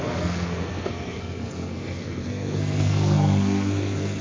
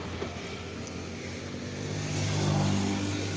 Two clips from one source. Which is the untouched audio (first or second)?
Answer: second